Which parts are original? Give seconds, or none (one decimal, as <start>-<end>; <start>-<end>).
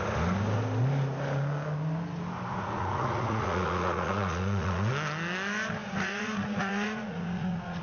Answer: 0.0-2.5; 4.9-5.8